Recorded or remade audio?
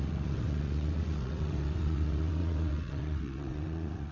remade